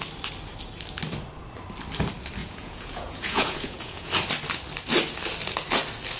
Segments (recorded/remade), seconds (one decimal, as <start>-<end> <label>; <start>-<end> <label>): 0.0-2.4 recorded; 2.4-4.1 remade; 4.1-6.2 recorded